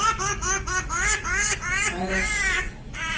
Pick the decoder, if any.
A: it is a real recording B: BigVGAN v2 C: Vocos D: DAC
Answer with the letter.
D